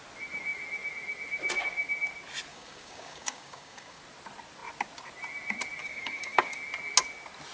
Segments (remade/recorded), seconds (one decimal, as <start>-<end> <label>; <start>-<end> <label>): 0.0-2.5 recorded; 2.5-4.0 remade; 4.0-5.8 recorded; 5.8-6.6 remade; 6.6-7.5 recorded